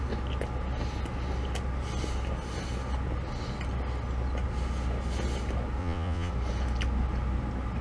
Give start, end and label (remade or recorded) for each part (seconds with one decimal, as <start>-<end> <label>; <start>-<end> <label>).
0.0-5.8 recorded; 5.8-6.3 remade; 6.3-7.8 recorded